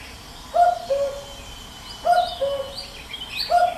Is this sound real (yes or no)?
yes